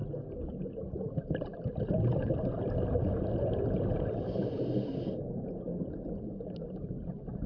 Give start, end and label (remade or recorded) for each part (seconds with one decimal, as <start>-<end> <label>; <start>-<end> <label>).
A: 0.0-7.5 recorded